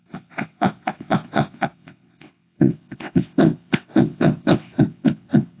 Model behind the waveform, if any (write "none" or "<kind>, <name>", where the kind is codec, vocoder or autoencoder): vocoder, WaveNeXt